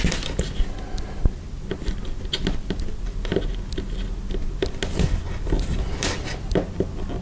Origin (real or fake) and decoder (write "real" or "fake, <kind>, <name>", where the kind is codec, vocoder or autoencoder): real